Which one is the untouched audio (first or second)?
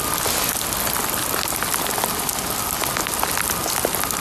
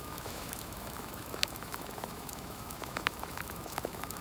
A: first